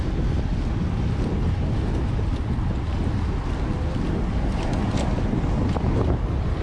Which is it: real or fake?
real